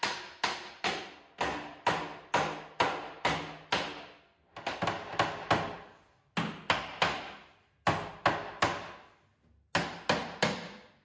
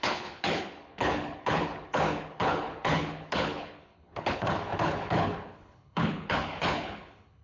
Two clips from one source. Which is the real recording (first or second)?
first